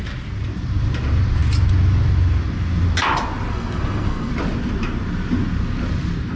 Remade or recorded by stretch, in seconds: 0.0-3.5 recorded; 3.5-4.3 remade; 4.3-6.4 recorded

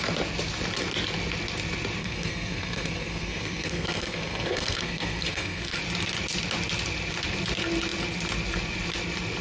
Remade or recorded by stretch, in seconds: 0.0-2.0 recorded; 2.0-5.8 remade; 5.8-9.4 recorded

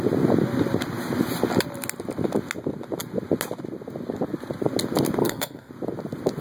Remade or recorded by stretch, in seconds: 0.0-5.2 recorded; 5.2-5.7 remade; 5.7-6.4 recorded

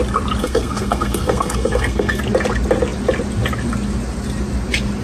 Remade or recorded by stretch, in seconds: 0.0-0.4 recorded; 0.4-2.2 remade; 2.2-5.0 recorded